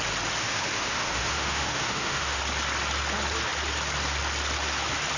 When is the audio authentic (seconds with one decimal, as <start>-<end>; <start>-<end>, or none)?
0.0-0.4; 2.4-5.2